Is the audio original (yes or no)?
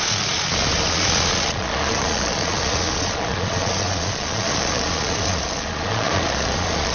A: no